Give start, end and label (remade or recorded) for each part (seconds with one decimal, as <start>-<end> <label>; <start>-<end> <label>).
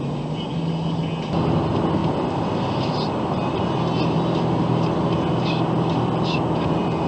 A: 0.0-7.1 recorded